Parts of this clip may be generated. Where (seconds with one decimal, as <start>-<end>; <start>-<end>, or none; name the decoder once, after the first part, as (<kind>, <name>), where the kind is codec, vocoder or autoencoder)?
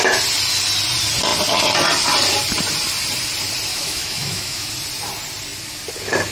3.7-4.7 (autoencoder, DAC-VAE)